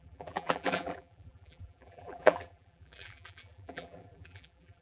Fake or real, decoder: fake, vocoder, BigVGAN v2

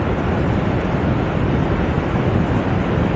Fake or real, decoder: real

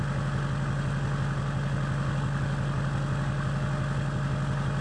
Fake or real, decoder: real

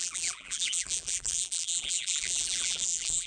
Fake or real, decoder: fake, vocoder, BigVGAN v2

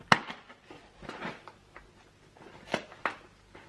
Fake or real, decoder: real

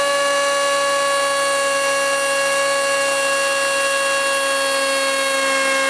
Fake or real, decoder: real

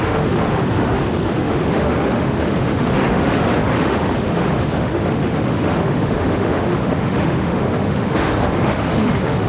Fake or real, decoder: fake, autoencoder, DAC-VAE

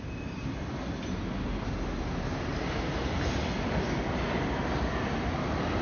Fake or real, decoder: real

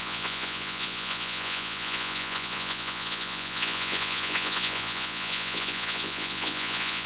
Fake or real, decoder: fake, vocoder, Vocos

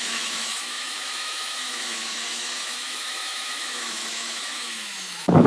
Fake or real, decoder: fake, autoencoder, DAC-VAE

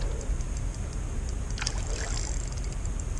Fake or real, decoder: real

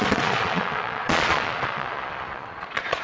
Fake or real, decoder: fake, vocoder, Vocos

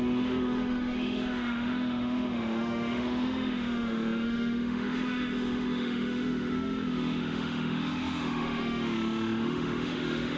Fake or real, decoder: fake, autoencoder, DAC-VAE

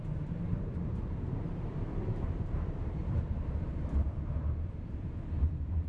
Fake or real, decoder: fake, vocoder, BigVGAN v2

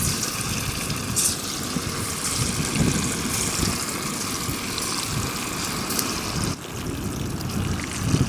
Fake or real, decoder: real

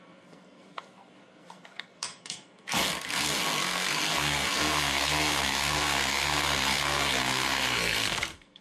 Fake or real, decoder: fake, codec, SNAC